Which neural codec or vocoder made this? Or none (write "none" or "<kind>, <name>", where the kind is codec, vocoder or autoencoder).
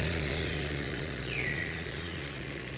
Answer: vocoder, Vocos